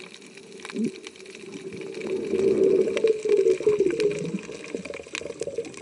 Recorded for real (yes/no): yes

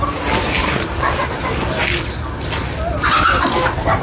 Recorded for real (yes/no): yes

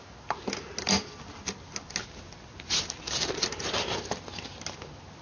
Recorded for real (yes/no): yes